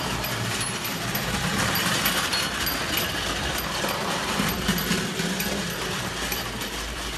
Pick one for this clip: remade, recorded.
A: remade